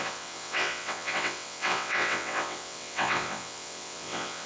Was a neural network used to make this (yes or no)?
yes